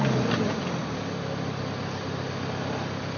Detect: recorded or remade recorded